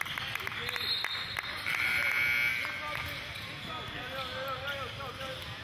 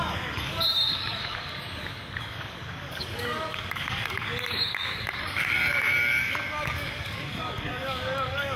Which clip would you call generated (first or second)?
second